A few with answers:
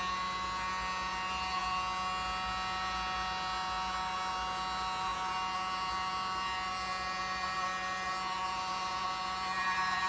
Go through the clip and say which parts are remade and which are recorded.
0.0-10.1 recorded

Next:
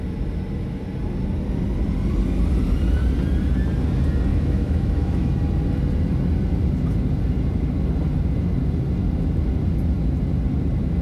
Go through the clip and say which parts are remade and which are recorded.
0.0-4.3 recorded; 4.3-5.3 remade; 5.3-11.0 recorded

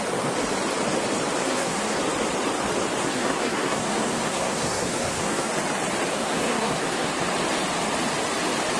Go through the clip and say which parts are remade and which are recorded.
0.0-1.4 recorded; 1.4-2.0 remade; 2.0-3.0 recorded; 3.0-5.5 remade; 5.5-6.1 recorded; 6.1-7.1 remade; 7.1-8.8 recorded

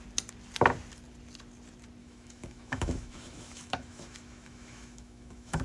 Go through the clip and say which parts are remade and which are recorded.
0.0-2.0 recorded; 2.0-5.6 remade

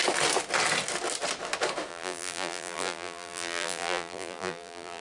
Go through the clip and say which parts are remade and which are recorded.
0.0-1.9 recorded; 1.9-5.0 remade

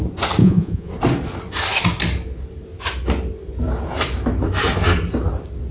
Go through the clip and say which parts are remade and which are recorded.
0.0-0.4 recorded; 0.4-0.9 remade; 0.9-5.7 recorded